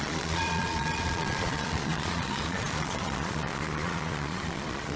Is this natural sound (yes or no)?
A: no